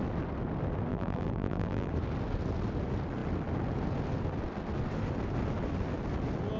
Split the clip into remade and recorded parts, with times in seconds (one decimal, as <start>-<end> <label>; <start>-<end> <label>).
0.0-0.9 recorded; 0.9-1.9 remade; 1.9-6.6 recorded

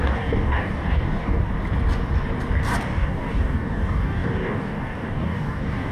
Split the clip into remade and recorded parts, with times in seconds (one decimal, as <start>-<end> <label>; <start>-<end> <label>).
0.0-1.5 remade; 1.5-2.8 recorded; 2.8-5.9 remade